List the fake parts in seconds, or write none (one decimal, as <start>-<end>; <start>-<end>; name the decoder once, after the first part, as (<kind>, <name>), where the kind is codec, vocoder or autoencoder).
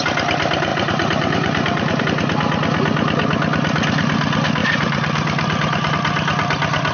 0.7-2.0 (vocoder, BigVGAN v2); 4.6-5.9